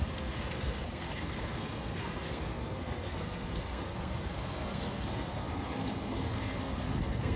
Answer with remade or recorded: remade